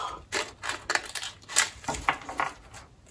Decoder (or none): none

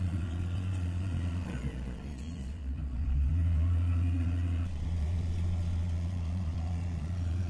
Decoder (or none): vocoder, Vocos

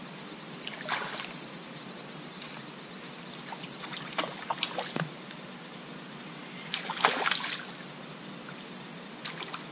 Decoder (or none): none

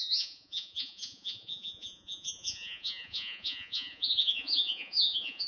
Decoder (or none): vocoder, Vocos